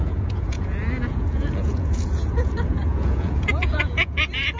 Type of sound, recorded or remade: remade